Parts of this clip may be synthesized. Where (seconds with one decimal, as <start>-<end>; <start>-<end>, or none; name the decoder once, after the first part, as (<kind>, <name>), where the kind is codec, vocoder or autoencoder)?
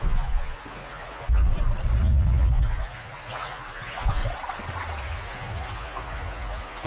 0.0-1.5 (vocoder, Vocos); 2.0-4.2; 5.0-6.9